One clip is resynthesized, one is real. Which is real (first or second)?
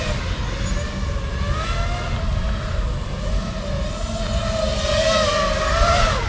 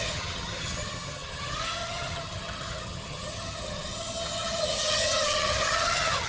first